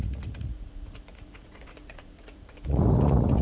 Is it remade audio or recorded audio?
remade